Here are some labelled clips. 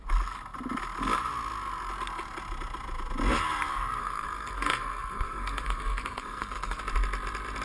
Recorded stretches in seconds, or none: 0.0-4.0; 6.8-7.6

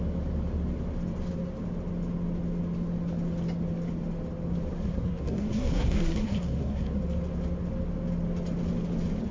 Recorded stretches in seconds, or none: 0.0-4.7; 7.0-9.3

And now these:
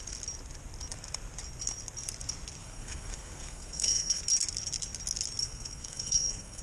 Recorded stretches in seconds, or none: 0.0-2.6; 4.2-5.4

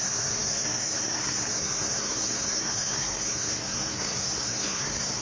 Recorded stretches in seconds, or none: none